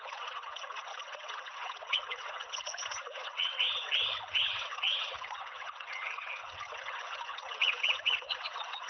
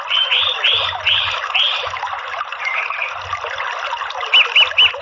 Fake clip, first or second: first